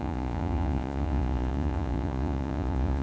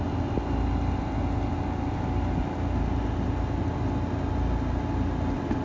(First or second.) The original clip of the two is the second